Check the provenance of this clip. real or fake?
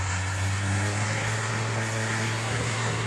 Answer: fake